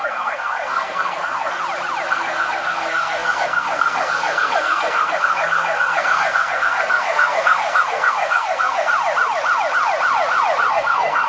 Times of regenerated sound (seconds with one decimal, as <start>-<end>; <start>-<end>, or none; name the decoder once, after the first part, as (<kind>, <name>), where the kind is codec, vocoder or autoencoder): 0.0-1.6 (codec, SNAC); 2.1-8.9; 10.7-11.3